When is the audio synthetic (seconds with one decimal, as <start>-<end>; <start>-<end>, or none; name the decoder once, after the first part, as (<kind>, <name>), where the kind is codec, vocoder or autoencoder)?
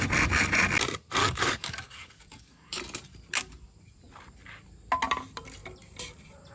1.2-2.8 (codec, DAC)